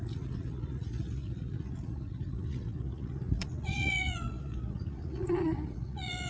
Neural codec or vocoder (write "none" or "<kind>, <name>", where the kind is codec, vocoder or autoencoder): vocoder, Vocos